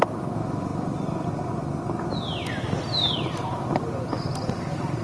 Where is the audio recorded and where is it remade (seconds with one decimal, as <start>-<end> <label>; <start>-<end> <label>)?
0.0-5.0 recorded